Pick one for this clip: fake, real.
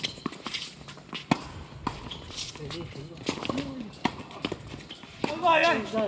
real